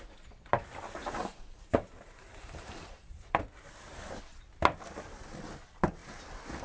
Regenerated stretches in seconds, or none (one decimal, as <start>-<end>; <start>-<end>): 1.0-3.4